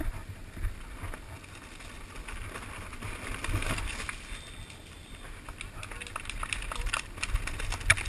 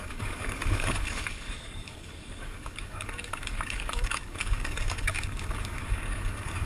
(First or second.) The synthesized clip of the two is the second